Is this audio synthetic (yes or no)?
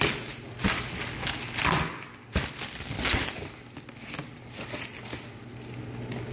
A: no